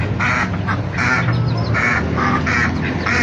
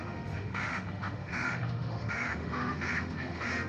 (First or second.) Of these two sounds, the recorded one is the first